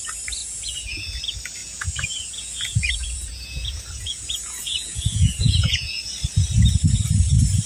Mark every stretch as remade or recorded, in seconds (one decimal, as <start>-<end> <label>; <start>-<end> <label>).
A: 0.0-0.4 recorded; 0.4-1.2 remade; 1.2-1.6 recorded; 1.6-6.0 remade; 6.0-7.7 recorded